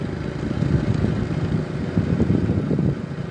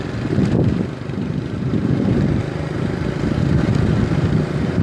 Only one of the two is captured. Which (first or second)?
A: first